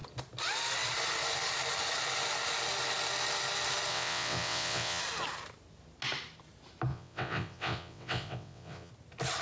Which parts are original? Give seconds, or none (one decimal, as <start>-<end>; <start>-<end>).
0.0-3.9; 5.0-6.9; 8.9-9.4

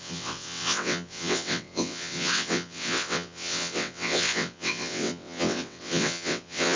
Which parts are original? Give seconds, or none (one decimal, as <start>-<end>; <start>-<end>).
none